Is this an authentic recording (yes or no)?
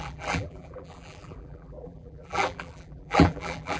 no